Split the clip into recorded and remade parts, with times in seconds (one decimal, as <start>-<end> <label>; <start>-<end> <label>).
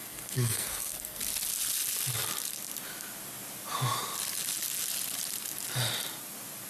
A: 0.0-1.2 remade; 1.2-6.7 recorded